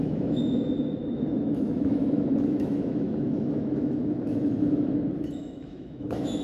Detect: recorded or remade remade